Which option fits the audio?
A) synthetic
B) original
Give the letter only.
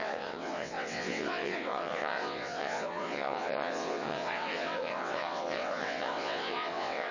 A